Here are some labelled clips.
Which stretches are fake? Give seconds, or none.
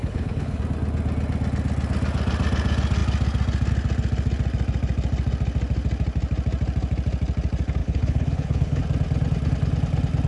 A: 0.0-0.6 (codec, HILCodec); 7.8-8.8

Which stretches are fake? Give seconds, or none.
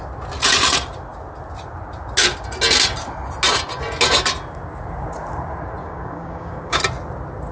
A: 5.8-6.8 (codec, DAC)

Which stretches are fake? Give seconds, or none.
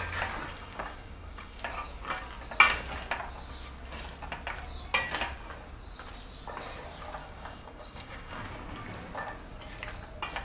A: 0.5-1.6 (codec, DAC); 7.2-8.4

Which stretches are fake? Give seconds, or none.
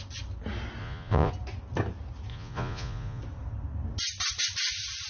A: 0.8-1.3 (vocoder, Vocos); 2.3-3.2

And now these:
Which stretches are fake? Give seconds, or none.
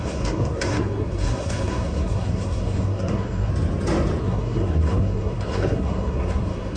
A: 0.0-3.5 (codec, SNAC); 4.2-6.8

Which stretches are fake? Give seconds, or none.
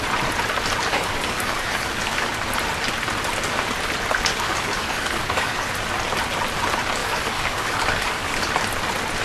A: 0.9-2.3 (codec, DAC); 4.3-5.7; 7.0-8.5